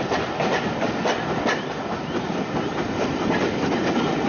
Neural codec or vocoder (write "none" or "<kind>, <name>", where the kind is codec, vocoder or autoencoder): none